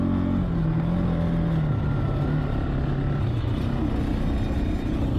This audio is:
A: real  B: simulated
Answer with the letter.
A